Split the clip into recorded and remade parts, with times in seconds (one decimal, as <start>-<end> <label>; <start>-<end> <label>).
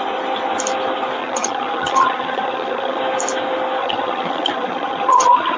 0.0-1.2 recorded; 1.2-3.0 remade; 3.0-3.8 recorded; 3.8-5.6 remade